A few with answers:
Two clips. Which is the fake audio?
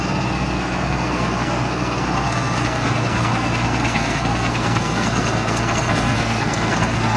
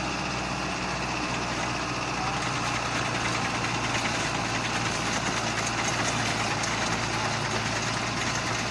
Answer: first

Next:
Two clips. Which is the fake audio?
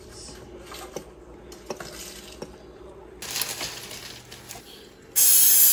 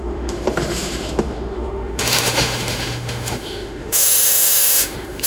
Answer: second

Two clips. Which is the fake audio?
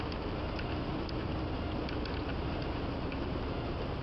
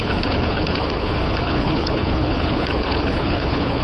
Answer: second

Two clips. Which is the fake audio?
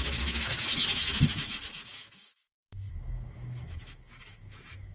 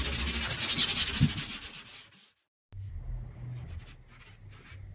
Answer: first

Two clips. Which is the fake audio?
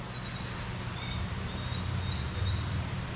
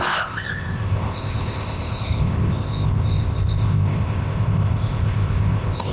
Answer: second